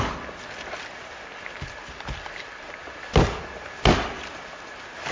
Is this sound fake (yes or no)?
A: no